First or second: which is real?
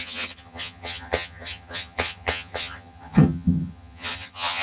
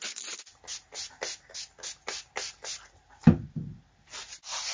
second